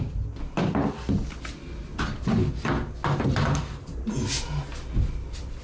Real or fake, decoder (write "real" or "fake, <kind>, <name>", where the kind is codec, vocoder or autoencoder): real